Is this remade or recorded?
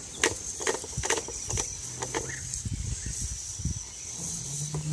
recorded